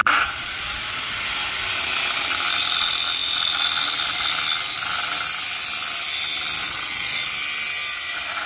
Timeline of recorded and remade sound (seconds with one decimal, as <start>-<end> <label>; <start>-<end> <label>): 0.0-1.0 remade; 1.0-6.6 recorded; 6.6-7.3 remade; 7.3-8.5 recorded